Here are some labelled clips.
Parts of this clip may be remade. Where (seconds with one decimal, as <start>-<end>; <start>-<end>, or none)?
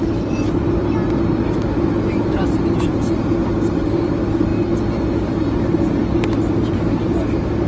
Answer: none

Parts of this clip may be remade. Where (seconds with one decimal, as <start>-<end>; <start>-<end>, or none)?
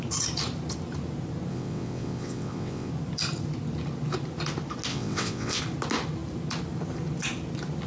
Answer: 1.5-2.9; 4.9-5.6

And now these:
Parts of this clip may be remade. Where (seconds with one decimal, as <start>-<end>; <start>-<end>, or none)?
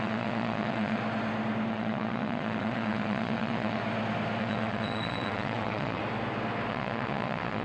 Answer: 0.0-1.0; 1.7-3.8; 4.4-6.0; 6.7-7.6